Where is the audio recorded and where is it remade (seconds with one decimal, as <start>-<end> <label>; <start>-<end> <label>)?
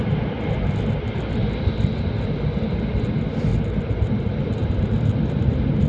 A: 0.0-4.6 recorded; 4.6-5.9 remade